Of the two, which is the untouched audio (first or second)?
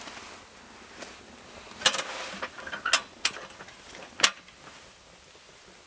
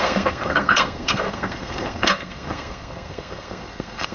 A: first